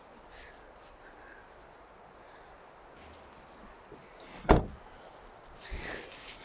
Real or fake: real